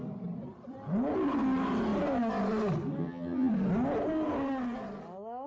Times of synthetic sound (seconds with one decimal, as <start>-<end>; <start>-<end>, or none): 3.0-3.5

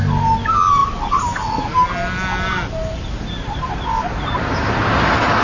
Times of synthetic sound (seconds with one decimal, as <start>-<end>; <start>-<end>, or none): none